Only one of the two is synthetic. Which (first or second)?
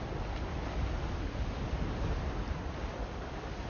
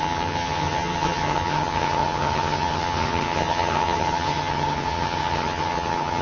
second